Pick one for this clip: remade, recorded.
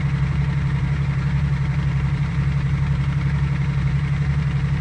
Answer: remade